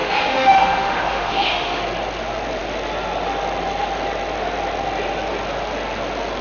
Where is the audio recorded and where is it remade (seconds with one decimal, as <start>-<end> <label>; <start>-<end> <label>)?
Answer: 0.0-1.8 remade; 1.8-6.4 recorded